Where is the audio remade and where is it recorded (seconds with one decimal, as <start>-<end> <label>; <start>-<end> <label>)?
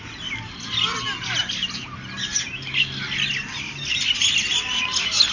0.0-5.3 recorded